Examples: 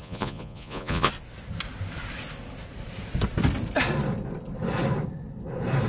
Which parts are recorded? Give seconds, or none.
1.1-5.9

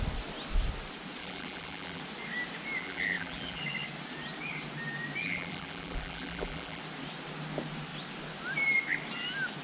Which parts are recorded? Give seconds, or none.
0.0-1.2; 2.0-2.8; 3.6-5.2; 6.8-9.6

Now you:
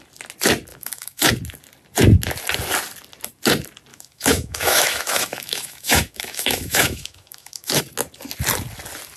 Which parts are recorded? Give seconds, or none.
0.0-0.7; 1.3-3.9; 7.8-9.2

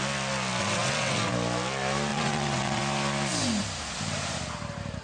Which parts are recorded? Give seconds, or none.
0.0-0.6; 1.3-2.1; 2.8-5.0

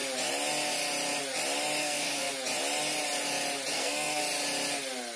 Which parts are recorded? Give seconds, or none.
0.0-1.8; 2.3-3.7; 4.2-5.2

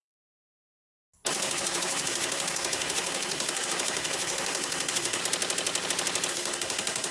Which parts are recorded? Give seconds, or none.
0.4-1.3; 5.2-6.3